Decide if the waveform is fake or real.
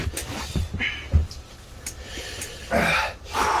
real